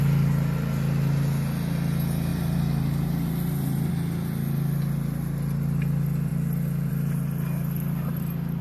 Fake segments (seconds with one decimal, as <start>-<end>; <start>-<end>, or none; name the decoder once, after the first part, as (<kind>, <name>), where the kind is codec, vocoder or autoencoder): 2.3-3.9 (vocoder, BigVGAN v2)